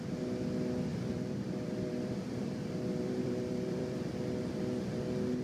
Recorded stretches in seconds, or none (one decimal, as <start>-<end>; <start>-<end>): 0.0-0.9; 4.1-5.4